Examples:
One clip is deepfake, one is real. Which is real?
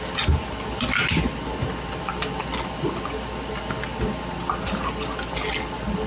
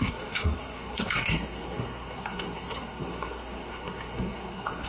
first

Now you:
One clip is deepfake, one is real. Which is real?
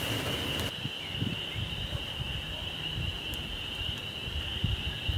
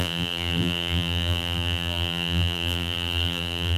first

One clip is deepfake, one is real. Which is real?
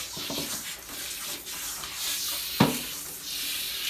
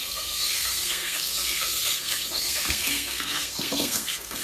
first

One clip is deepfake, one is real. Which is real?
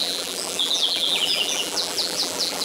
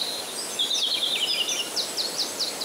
second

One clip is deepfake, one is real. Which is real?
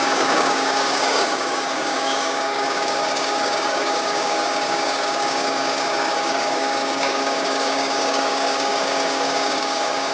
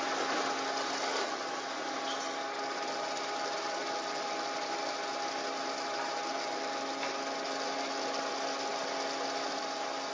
second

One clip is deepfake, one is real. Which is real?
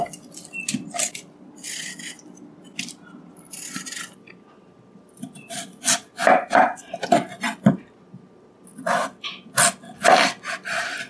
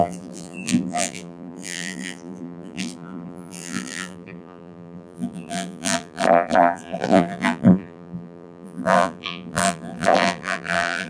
first